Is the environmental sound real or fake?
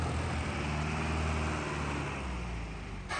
real